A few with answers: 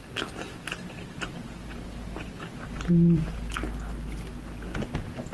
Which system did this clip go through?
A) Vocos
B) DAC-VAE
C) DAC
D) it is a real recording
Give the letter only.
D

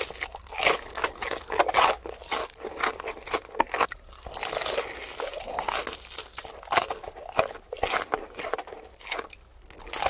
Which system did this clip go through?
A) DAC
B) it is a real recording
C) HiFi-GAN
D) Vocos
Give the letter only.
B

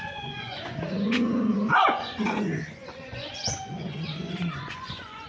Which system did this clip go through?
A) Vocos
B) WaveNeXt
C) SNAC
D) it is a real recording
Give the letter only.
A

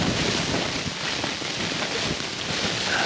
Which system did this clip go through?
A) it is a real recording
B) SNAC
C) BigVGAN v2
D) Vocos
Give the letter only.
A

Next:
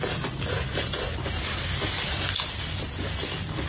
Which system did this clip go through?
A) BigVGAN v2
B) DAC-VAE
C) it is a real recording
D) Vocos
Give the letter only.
C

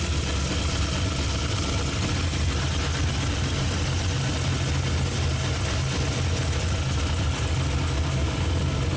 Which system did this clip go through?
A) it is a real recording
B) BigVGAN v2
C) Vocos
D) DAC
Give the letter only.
A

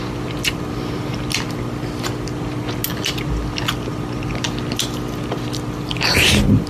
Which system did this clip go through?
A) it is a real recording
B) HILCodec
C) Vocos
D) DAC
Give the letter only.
A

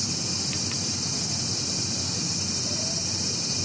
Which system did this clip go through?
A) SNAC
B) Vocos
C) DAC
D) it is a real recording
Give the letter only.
D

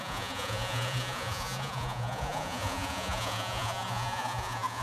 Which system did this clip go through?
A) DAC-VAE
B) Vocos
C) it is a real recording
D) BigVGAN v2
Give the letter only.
B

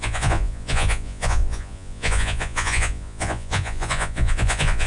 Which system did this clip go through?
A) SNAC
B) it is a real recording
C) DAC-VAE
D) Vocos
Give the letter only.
D